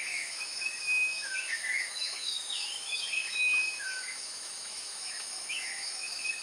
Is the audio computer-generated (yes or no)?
yes